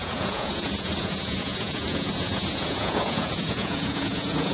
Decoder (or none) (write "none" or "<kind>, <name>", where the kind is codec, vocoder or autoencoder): vocoder, Vocos